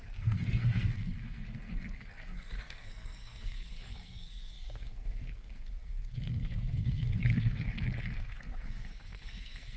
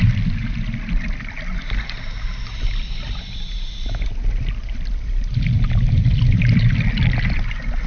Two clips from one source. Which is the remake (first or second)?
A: first